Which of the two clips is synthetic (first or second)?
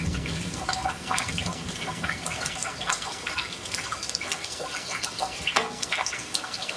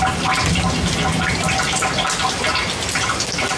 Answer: first